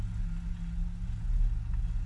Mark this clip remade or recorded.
recorded